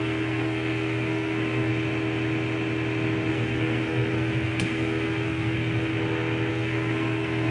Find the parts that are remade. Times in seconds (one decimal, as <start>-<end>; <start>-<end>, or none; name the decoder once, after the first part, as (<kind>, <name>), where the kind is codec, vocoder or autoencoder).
0.0-1.7 (codec, SNAC); 3.3-5.9; 6.5-7.5